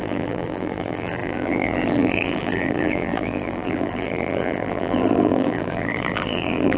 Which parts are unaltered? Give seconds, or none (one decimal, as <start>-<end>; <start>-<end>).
none